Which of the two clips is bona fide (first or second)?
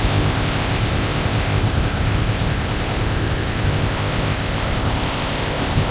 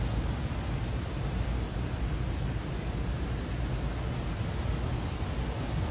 second